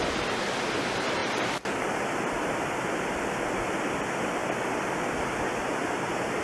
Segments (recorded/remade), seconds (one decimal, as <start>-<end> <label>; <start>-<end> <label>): 0.0-1.2 recorded; 1.2-3.9 remade; 3.9-6.4 recorded